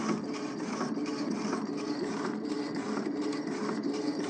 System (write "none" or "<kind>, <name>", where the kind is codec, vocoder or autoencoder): vocoder, BigVGAN v2